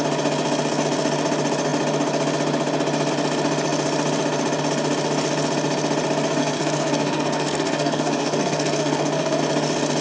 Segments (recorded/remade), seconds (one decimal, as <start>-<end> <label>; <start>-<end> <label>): 0.0-6.4 recorded; 6.4-9.4 remade; 9.4-10.0 recorded